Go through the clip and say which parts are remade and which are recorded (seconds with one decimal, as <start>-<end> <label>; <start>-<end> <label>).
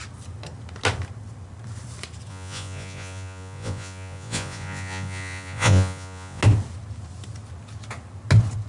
0.0-2.3 recorded; 2.3-6.4 remade; 6.4-8.7 recorded